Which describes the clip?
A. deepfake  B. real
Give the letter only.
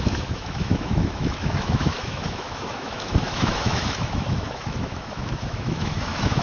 A